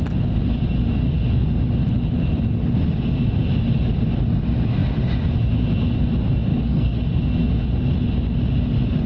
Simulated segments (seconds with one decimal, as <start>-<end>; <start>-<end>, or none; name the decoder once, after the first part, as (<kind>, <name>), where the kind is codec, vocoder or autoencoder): 6.5-7.0 (codec, SNAC)